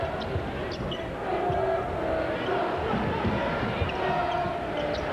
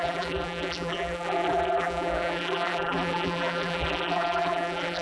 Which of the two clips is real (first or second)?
first